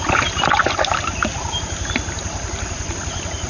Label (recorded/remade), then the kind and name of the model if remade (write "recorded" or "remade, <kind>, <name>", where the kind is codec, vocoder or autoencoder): recorded